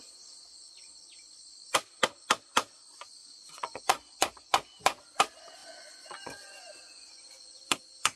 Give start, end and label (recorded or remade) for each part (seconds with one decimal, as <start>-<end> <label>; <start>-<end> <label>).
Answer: 0.0-3.2 recorded; 3.2-5.0 remade; 5.0-5.6 recorded; 5.6-8.2 remade